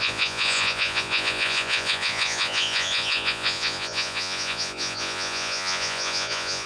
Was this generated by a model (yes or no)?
yes